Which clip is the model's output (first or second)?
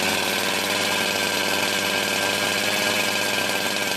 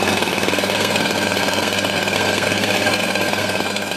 second